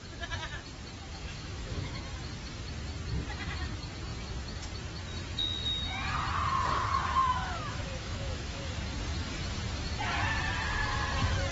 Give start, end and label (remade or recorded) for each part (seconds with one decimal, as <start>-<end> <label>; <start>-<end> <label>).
0.0-1.1 recorded; 1.1-2.0 remade; 2.0-7.2 recorded; 7.2-8.7 remade; 8.7-11.5 recorded